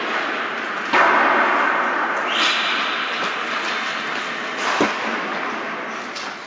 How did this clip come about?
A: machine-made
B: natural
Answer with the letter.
B